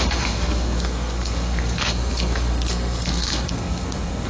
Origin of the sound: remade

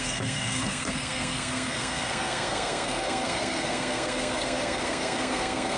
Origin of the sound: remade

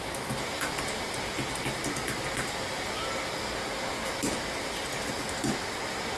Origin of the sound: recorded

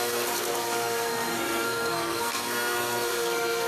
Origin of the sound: remade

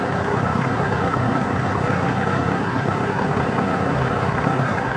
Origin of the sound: remade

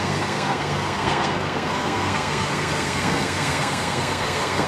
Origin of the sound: remade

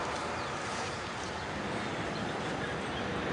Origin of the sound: recorded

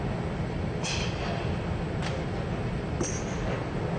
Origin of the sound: recorded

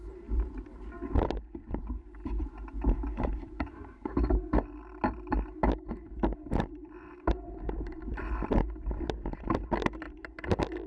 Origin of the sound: recorded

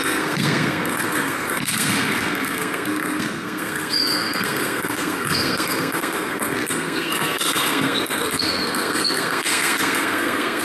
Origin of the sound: remade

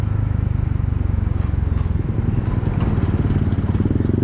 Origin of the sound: recorded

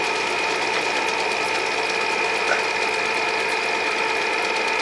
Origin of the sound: recorded